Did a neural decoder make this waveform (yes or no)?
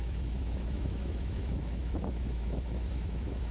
yes